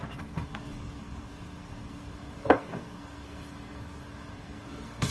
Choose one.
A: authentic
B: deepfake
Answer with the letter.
B